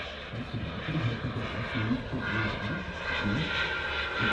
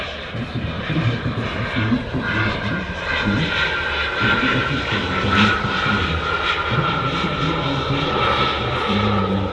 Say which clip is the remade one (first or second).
second